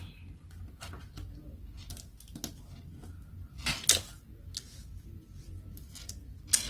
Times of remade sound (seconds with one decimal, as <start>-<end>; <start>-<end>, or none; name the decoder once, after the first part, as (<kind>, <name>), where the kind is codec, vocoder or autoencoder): none